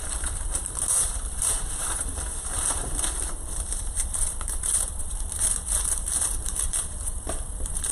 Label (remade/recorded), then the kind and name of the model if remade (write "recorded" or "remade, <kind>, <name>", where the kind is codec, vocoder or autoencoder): remade, vocoder, BigVGAN v2